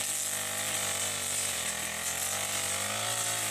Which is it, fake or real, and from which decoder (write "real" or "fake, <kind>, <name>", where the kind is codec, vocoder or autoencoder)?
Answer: real